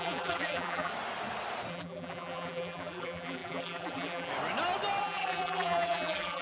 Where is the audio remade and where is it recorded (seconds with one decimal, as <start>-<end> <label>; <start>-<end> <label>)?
0.0-0.9 remade; 0.9-1.7 recorded; 1.7-4.3 remade; 4.3-5.0 recorded; 5.0-6.4 remade

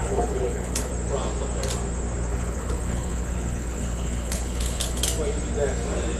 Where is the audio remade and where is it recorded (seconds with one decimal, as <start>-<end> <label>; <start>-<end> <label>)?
0.0-0.9 remade; 0.9-2.3 recorded; 2.3-5.0 remade; 5.0-6.2 recorded

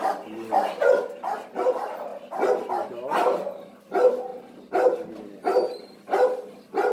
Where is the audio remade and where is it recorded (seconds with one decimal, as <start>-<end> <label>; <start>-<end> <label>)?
0.0-6.9 recorded

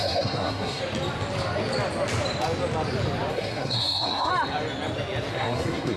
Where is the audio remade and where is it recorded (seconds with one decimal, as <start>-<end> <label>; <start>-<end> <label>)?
0.0-0.8 remade; 0.8-3.3 recorded; 3.3-4.3 remade; 4.3-5.3 recorded; 5.3-6.0 remade